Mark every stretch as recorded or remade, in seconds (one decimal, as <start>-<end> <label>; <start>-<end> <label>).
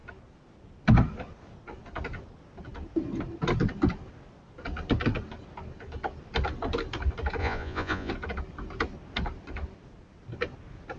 0.0-7.4 recorded; 7.4-8.1 remade; 8.1-11.0 recorded